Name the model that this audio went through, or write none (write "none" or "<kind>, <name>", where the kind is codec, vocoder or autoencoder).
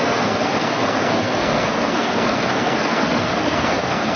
codec, SNAC